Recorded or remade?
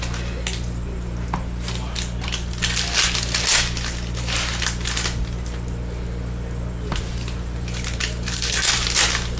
recorded